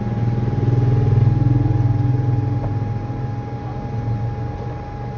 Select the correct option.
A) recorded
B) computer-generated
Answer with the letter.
A